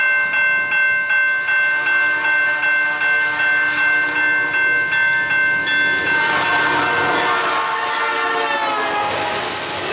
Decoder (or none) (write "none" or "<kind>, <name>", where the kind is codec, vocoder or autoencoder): none